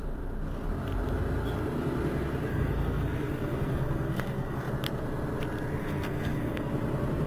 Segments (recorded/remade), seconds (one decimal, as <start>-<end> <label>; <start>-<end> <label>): 0.0-2.5 recorded; 2.5-4.7 remade; 4.7-5.8 recorded; 5.8-6.7 remade; 6.7-7.3 recorded